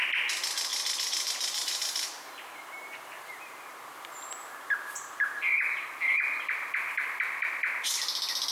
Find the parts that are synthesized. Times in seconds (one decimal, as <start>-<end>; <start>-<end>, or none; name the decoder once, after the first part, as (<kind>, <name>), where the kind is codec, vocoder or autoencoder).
0.7-5.4 (vocoder, BigVGAN v2)